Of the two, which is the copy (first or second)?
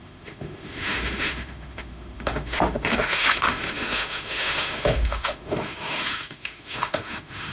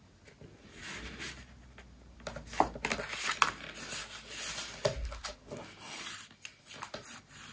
first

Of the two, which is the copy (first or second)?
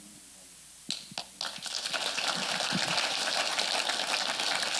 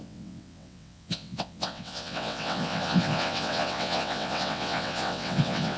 second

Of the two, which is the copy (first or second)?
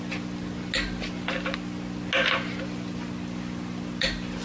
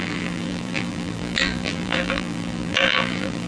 second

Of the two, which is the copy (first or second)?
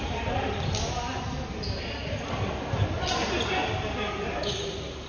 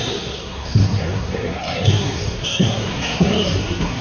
second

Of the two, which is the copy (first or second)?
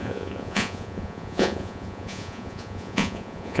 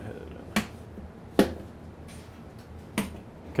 first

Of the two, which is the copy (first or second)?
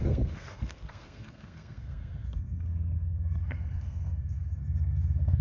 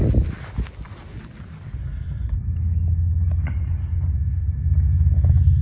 first